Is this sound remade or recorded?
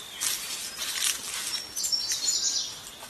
recorded